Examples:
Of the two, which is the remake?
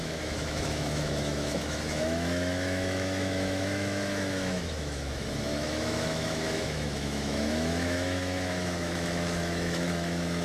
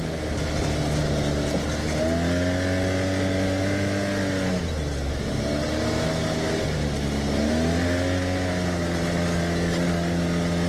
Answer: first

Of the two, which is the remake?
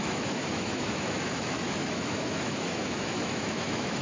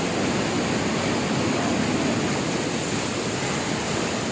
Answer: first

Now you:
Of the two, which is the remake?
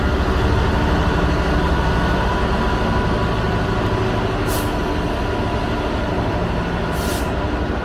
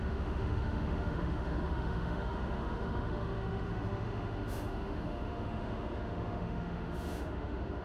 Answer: second